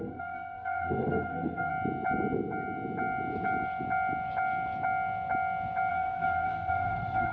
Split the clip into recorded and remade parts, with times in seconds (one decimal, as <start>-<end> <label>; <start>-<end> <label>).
0.0-1.7 remade; 1.7-5.9 recorded; 5.9-7.3 remade